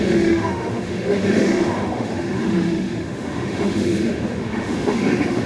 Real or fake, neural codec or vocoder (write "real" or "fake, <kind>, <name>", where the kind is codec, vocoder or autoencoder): fake, autoencoder, DAC-VAE